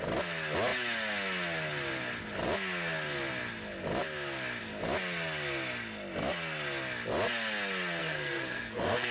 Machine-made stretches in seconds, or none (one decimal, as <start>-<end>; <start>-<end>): 8.0-9.1